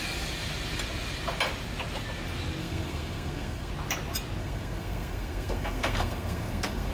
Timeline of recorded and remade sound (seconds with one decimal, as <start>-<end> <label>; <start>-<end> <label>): 0.0-2.6 recorded; 2.6-3.7 remade; 3.7-4.4 recorded; 4.4-6.9 remade